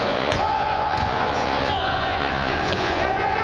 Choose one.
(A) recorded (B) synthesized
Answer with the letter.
B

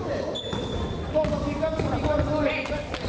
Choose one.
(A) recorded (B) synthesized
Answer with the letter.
A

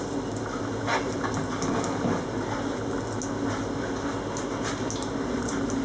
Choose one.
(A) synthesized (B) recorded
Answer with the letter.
B